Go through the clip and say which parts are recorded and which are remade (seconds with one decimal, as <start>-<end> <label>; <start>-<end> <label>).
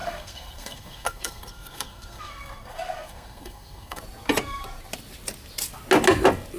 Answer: 0.0-4.0 remade; 4.0-6.6 recorded